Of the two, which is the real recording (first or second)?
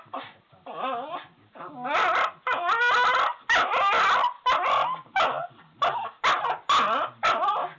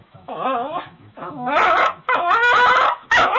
first